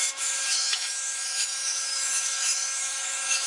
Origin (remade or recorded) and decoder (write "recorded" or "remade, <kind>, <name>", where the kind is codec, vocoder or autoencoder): remade, autoencoder, DAC-VAE